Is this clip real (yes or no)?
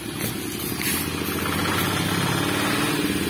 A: yes